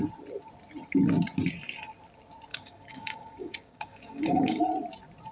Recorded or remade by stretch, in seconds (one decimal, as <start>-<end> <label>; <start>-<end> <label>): 0.0-2.5 recorded; 2.5-4.6 remade; 4.6-5.3 recorded